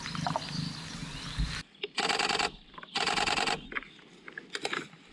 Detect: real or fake real